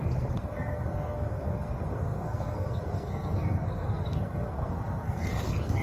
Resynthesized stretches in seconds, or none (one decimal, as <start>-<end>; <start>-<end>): 0.0-5.8